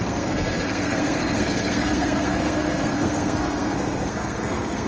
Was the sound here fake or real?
fake